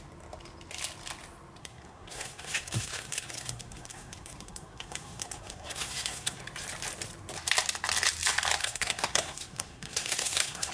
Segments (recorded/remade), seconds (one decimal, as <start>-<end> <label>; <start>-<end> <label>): 0.0-1.6 recorded; 1.6-6.4 remade; 6.4-8.6 recorded; 8.6-10.7 remade